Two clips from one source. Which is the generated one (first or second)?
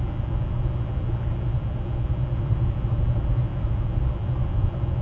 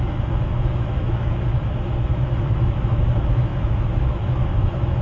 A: second